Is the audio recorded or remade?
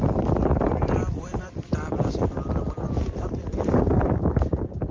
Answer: remade